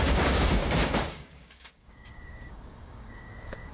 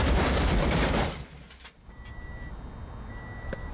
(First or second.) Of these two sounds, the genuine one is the second